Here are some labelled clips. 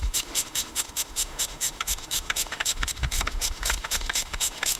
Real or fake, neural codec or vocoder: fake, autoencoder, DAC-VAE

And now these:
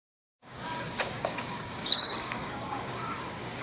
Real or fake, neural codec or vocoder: fake, codec, DAC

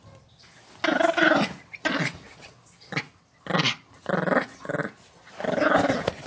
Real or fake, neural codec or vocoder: real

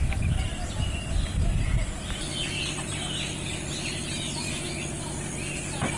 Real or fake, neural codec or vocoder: real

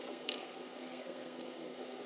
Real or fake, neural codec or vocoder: fake, codec, SNAC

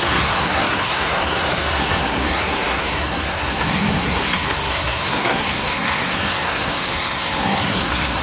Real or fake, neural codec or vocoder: fake, codec, SNAC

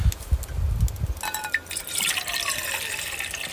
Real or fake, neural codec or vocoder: real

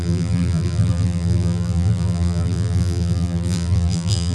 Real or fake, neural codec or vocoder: fake, vocoder, BigVGAN v2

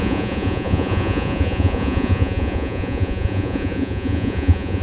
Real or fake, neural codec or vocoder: fake, vocoder, Vocos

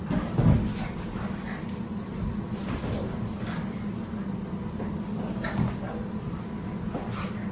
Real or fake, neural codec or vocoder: real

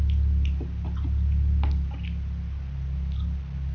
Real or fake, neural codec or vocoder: real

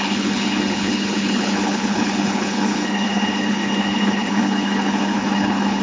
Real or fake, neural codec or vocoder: fake, codec, HILCodec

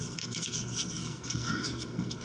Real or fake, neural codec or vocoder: fake, codec, SNAC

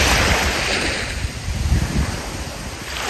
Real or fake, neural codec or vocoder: real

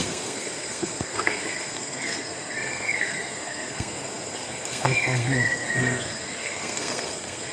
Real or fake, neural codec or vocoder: fake, codec, SNAC